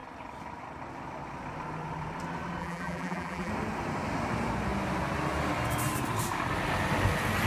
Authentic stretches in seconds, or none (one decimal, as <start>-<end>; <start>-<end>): 0.0-2.6; 3.5-7.5